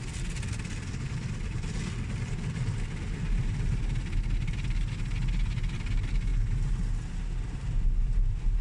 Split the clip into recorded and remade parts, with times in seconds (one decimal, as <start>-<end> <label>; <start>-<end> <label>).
0.0-8.6 recorded